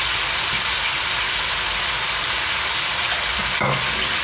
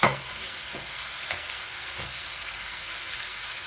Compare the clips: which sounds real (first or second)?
first